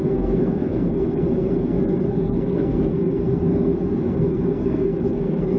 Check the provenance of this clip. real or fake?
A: fake